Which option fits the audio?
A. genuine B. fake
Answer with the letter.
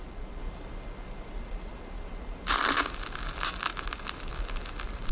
A